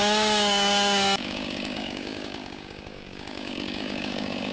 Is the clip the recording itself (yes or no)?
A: no